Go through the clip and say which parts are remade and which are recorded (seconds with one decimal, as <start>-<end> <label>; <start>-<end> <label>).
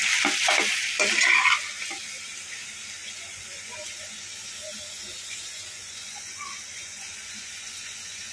0.0-3.0 recorded; 3.0-8.3 remade